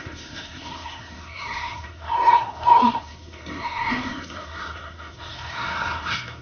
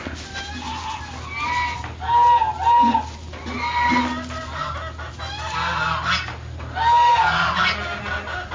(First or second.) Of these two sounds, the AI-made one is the first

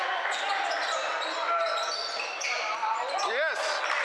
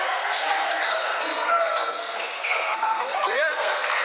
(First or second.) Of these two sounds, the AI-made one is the second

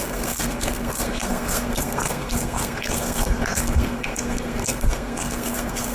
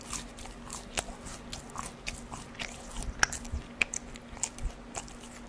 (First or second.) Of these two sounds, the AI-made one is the first